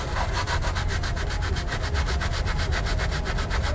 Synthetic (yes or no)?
no